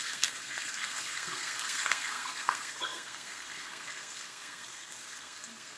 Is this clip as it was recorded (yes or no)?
no